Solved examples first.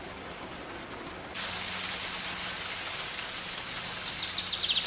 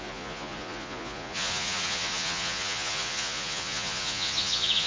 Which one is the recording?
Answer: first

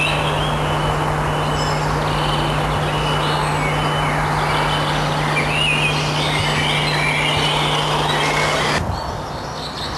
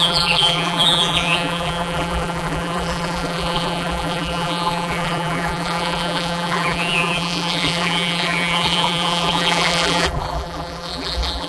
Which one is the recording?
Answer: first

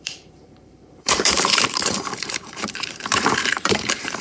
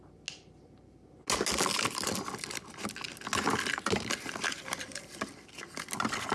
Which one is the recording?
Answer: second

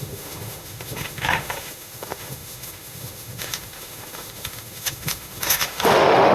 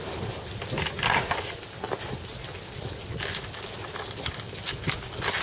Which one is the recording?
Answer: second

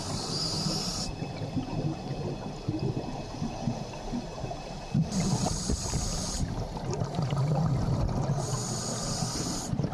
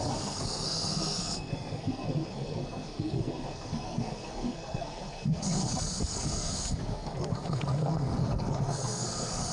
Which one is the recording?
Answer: first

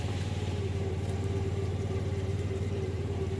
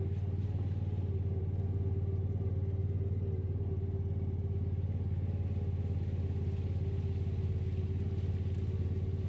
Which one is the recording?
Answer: second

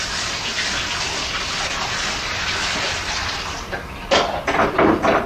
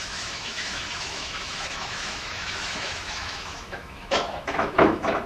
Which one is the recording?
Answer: first